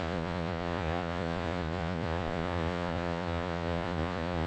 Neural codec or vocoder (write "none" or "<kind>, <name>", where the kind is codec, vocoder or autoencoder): vocoder, Vocos